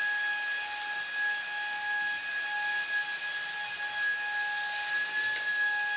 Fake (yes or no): no